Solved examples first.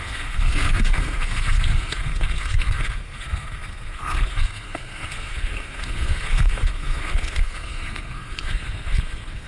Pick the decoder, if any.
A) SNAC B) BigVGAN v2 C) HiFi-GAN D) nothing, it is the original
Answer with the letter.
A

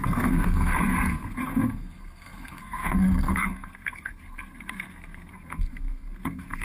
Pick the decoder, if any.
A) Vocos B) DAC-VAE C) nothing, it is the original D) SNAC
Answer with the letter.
D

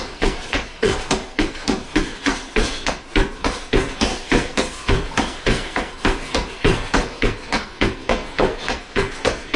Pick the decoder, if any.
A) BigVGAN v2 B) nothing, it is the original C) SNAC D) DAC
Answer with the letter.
C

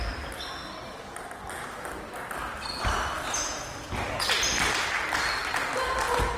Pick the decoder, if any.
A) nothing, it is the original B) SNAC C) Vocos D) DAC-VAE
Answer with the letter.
A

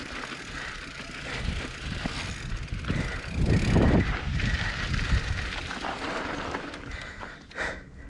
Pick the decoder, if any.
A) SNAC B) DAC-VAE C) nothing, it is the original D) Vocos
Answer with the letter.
C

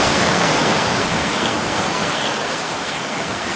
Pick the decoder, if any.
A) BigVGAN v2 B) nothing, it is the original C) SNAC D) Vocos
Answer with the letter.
C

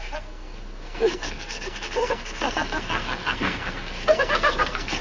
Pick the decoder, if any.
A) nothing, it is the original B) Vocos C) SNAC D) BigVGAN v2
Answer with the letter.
C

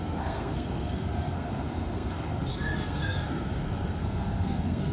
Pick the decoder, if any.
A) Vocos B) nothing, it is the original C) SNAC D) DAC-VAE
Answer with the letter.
C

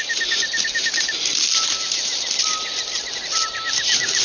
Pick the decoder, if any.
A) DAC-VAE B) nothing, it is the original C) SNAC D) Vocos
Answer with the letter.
B